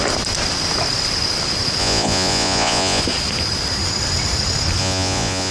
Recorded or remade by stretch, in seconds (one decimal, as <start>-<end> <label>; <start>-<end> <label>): 0.0-1.8 recorded; 1.8-3.0 remade; 3.0-4.8 recorded; 4.8-5.5 remade